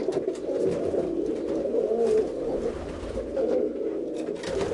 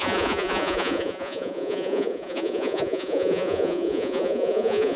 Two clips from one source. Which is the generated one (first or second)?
second